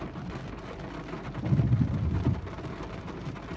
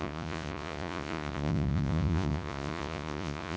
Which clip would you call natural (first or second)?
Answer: first